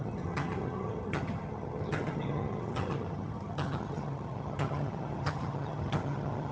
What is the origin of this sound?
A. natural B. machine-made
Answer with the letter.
B